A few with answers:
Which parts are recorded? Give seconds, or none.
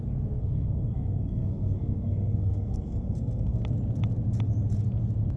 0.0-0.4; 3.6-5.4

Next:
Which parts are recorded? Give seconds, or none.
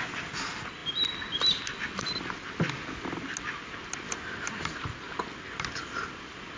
0.0-6.6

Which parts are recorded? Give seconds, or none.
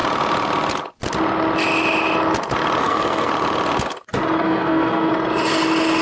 0.0-2.8; 3.3-4.4; 5.1-6.0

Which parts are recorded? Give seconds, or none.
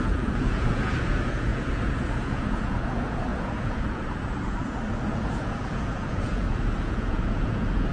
none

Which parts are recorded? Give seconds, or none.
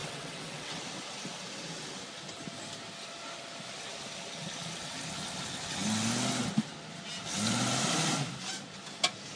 0.8-9.4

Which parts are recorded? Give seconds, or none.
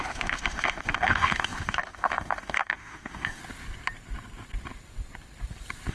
3.4-5.9